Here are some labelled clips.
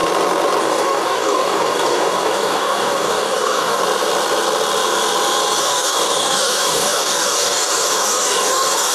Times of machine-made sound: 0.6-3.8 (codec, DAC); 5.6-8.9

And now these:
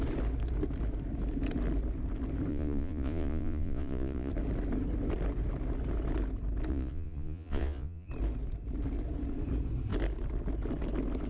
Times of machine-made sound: 2.5-4.3 (vocoder, Vocos); 6.7-8.1

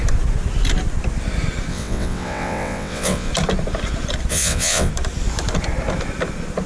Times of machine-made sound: 1.7-3.3 (vocoder, WaveNeXt); 4.3-4.9

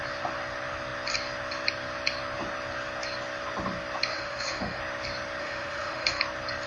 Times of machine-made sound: 4.1-4.8 (autoencoder, DAC-VAE); 5.4-6.2